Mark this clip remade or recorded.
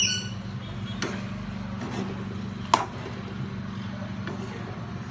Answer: recorded